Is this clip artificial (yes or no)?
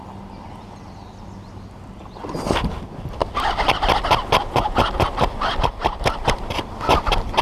no